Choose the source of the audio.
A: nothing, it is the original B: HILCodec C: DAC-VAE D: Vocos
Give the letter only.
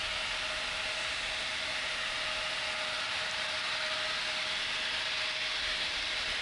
A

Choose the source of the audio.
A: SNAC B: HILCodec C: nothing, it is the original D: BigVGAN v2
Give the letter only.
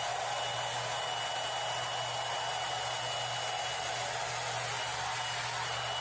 C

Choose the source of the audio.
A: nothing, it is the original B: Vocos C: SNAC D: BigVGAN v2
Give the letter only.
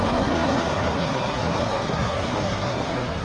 C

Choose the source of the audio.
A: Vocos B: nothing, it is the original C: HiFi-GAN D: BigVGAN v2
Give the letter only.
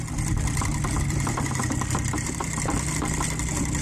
D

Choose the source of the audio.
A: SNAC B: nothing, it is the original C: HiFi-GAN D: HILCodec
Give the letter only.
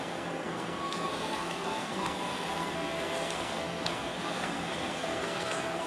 A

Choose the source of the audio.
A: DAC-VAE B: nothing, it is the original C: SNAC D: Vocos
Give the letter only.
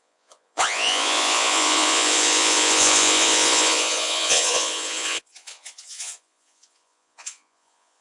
D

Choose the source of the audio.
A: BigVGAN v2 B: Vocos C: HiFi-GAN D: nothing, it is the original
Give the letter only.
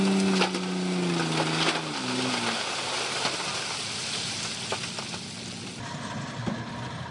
D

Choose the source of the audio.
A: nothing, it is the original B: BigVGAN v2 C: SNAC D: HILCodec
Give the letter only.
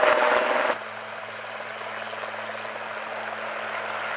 A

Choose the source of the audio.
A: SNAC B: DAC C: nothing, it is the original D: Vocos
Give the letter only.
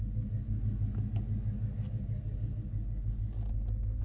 C